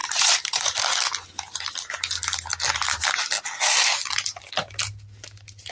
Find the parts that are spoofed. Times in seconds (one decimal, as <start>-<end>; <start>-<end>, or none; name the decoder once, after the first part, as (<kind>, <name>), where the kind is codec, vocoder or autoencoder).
0.0-0.8 (vocoder, BigVGAN v2)

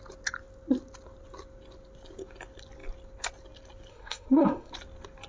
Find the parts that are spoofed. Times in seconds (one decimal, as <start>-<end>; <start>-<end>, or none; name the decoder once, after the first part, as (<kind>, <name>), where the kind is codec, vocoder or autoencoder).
3.9-4.7 (codec, SNAC)